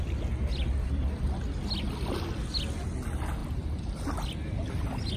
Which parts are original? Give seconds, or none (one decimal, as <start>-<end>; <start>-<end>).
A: 0.0-5.2